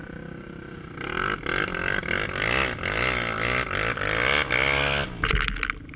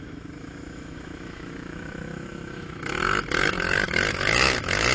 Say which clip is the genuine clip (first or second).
first